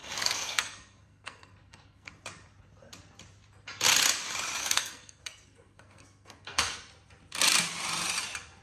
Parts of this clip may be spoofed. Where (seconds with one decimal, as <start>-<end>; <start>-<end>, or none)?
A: 0.0-2.1; 4.6-6.8